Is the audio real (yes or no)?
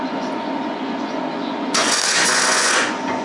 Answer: no